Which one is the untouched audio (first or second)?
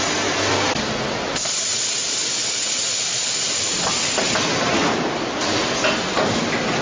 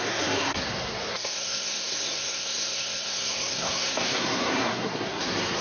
first